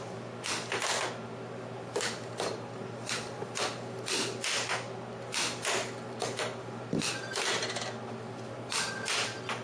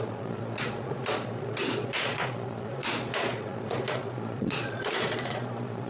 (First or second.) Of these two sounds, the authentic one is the first